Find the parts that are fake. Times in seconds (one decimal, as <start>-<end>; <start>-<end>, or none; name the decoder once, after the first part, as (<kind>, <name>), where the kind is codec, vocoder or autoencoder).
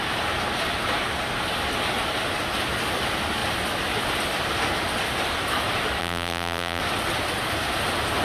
6.0-6.8 (vocoder, BigVGAN v2)